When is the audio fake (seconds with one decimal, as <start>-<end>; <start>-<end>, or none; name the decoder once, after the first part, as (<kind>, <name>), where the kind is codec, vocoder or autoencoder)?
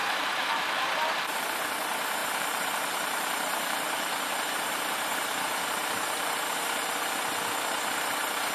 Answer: 0.0-1.6 (vocoder, BigVGAN v2); 2.2-7.2